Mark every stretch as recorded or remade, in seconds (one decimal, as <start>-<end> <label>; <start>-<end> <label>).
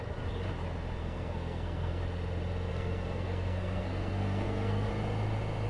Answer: 0.0-1.0 recorded; 1.0-2.0 remade; 2.0-2.7 recorded; 2.7-4.9 remade; 4.9-5.7 recorded